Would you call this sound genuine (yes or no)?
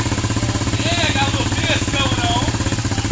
yes